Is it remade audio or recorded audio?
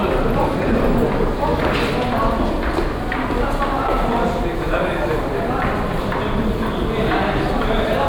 recorded